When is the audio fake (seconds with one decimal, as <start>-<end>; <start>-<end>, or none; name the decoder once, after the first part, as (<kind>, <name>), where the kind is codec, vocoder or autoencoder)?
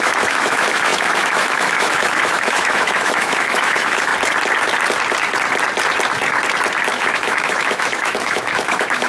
0.0-4.1 (autoencoder, DAC-VAE); 6.9-9.1